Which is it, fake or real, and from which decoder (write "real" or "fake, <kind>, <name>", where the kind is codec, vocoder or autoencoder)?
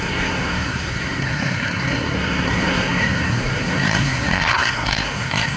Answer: fake, codec, SNAC